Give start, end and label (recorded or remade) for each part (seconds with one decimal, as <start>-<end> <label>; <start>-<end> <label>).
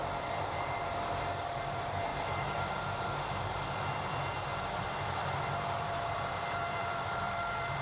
0.0-7.8 remade